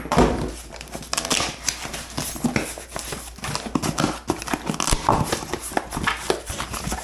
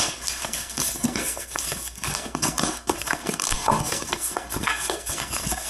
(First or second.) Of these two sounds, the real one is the first